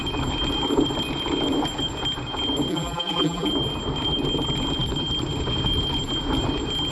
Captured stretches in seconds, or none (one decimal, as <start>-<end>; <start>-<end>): 0.0-2.7; 3.5-6.9